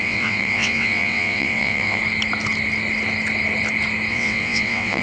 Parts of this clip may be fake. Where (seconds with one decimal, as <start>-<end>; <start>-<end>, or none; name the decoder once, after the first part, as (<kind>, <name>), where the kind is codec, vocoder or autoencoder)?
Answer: 0.0-2.0 (vocoder, WaveNeXt); 4.1-5.0